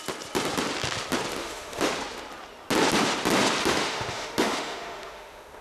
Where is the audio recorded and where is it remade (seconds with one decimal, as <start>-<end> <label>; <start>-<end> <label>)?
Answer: 0.0-1.4 recorded; 1.4-1.9 remade; 1.9-3.6 recorded; 3.6-5.6 remade